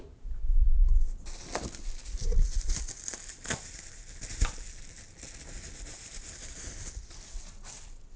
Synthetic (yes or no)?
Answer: no